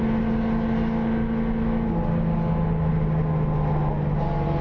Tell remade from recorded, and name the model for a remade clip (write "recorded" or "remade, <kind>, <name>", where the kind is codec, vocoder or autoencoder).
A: recorded